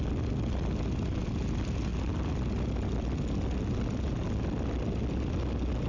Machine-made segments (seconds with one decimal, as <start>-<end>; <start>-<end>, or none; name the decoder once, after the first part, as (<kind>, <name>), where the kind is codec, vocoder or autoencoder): none